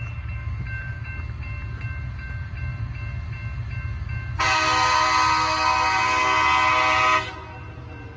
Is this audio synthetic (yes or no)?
no